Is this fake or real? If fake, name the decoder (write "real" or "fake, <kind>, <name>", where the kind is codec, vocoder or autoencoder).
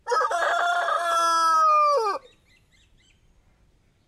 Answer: real